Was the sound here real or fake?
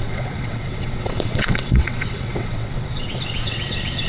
fake